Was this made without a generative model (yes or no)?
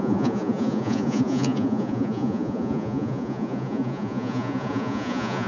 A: no